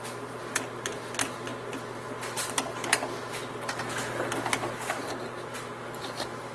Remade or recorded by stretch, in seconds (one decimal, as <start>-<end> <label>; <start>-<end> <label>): 0.0-6.5 recorded